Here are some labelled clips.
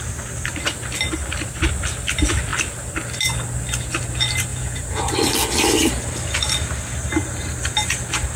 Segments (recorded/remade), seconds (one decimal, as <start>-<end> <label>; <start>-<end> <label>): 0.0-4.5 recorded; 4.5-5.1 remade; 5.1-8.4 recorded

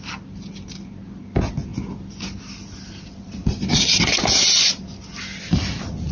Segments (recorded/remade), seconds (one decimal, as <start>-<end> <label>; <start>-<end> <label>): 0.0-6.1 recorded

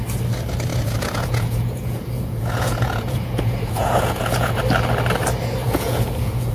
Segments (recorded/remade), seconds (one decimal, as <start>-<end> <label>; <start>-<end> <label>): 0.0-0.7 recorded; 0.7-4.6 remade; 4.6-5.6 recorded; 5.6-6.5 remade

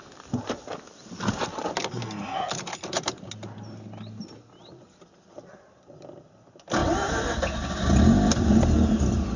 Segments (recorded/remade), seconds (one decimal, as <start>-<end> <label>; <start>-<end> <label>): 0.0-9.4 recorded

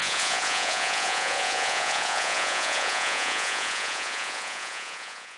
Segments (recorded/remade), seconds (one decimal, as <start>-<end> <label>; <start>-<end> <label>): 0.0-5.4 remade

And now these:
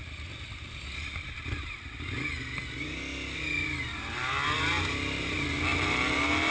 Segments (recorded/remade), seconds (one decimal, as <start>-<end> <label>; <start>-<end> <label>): 0.0-6.5 recorded